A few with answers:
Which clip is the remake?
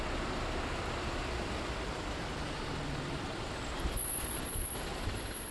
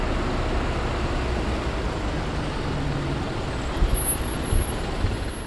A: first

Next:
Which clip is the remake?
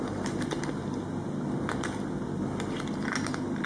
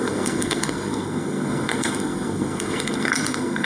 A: second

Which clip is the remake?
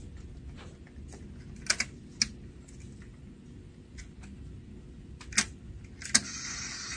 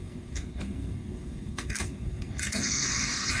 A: second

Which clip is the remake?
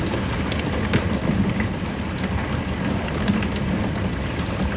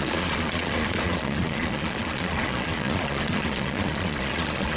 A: second